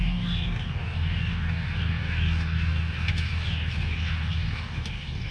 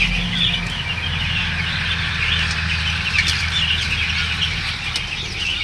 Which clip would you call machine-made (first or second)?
first